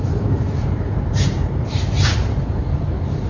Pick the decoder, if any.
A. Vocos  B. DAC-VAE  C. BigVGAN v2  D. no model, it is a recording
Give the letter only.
C